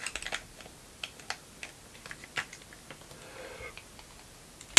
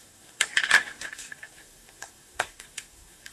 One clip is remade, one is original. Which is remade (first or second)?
second